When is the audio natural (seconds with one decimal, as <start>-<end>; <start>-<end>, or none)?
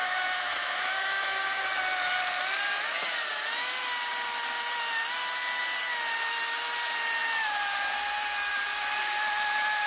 1.6-9.9